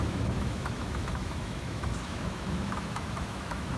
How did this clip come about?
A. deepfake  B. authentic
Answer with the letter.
A